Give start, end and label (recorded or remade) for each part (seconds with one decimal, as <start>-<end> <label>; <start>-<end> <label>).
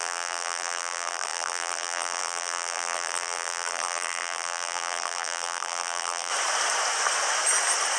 0.0-6.3 remade; 6.3-8.0 recorded